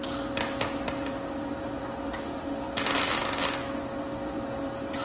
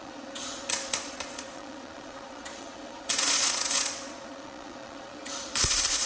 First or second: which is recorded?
first